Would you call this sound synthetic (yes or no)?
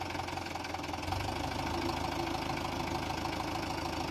no